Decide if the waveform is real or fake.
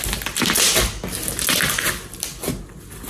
real